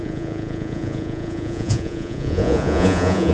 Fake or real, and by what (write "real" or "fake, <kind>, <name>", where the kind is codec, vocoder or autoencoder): fake, vocoder, Vocos